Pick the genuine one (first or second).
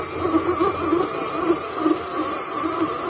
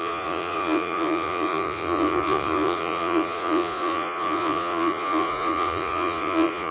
first